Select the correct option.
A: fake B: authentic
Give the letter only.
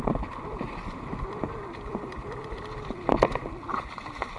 B